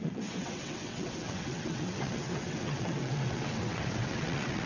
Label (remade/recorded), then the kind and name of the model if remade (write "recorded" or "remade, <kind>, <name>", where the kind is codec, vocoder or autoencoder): remade, vocoder, WaveNeXt